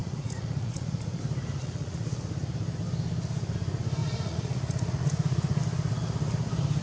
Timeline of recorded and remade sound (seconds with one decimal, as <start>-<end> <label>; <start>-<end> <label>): 0.0-1.2 remade; 1.2-1.6 recorded; 1.6-2.2 remade; 2.2-4.0 recorded; 4.0-5.6 remade; 5.6-6.8 recorded